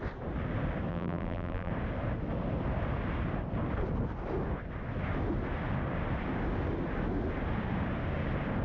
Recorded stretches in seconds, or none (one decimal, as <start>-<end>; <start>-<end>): 0.0-0.9; 1.7-8.6